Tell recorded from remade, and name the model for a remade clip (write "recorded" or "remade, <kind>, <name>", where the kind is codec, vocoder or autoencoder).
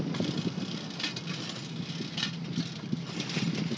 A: recorded